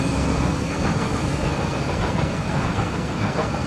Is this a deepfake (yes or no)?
yes